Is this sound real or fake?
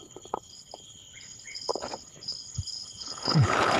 fake